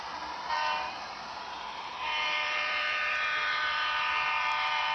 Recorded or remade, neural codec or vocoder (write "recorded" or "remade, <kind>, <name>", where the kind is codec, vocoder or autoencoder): remade, vocoder, BigVGAN v2